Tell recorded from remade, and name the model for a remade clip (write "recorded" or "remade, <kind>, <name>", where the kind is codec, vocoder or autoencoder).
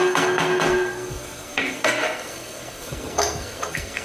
remade, codec, SNAC